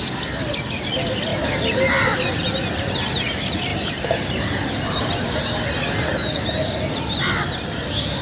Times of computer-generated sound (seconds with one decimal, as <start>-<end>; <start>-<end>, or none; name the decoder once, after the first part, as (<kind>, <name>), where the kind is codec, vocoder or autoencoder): 1.3-2.4 (vocoder, BigVGAN v2); 3.7-5.4; 6.1-7.3